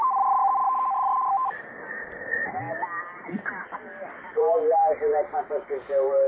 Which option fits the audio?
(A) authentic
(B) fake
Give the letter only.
A